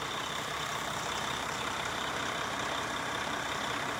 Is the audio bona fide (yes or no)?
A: no